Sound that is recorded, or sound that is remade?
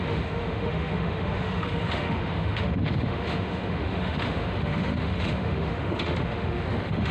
remade